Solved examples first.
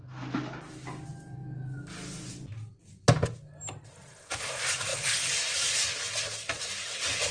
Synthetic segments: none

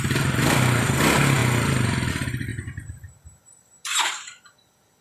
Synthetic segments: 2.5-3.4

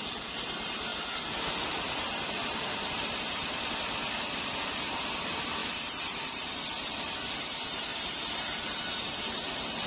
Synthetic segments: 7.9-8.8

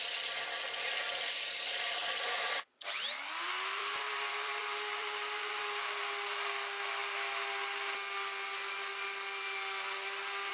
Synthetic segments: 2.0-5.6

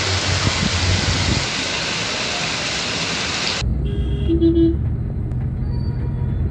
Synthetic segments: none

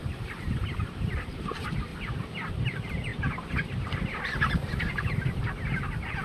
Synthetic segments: 0.0-1.9; 2.5-3.1; 5.6-6.2

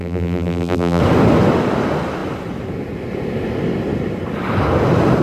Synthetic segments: 0.0-1.0

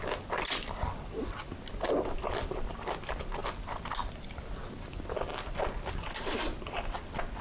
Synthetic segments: none